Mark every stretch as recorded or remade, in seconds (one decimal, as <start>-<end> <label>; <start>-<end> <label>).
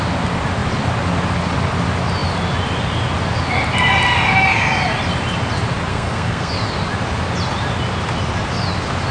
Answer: 0.0-5.9 recorded; 5.9-6.5 remade; 6.5-9.1 recorded